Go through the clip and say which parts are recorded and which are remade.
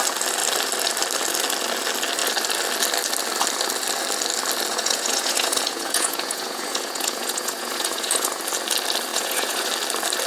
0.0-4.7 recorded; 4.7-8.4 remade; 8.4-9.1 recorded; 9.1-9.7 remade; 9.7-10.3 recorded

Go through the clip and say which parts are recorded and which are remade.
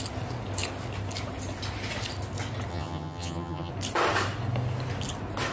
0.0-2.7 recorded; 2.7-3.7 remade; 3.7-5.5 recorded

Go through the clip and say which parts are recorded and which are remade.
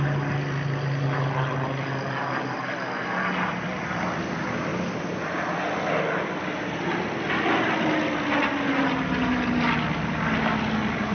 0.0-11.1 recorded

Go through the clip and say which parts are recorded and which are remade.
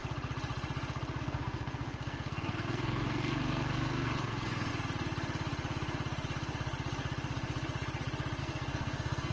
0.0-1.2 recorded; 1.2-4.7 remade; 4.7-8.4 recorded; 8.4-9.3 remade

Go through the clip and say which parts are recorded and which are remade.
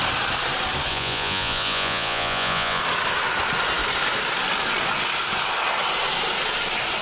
0.0-0.9 recorded; 0.9-2.8 remade; 2.8-7.0 recorded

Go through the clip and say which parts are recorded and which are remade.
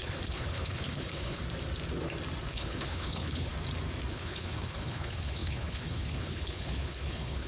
0.0-1.4 remade; 1.4-2.5 recorded; 2.5-3.5 remade; 3.5-4.1 recorded; 4.1-7.5 remade